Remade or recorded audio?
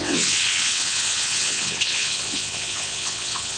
remade